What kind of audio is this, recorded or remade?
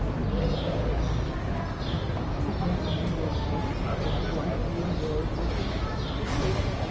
recorded